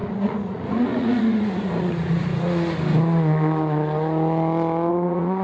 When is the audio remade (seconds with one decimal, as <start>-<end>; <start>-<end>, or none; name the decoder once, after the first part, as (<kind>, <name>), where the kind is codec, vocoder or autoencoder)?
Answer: 0.0-2.3 (vocoder, Vocos); 4.9-5.4